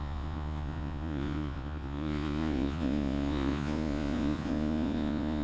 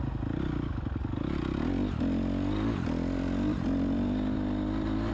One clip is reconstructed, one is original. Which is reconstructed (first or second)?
first